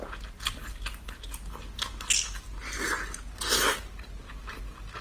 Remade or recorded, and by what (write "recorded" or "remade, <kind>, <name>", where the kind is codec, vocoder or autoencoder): recorded